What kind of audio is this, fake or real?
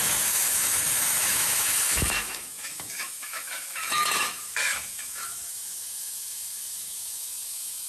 fake